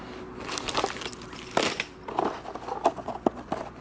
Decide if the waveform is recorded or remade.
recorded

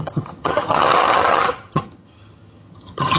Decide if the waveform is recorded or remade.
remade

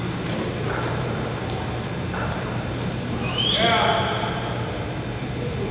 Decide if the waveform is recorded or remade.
remade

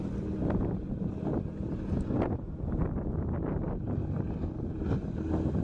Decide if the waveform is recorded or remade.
recorded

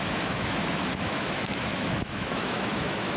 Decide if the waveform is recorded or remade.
remade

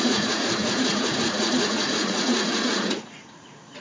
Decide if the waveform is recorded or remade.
remade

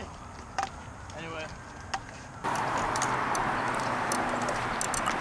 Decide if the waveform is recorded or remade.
recorded